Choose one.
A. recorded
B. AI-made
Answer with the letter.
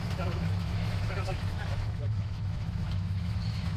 B